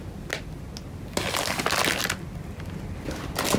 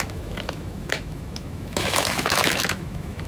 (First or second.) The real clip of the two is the first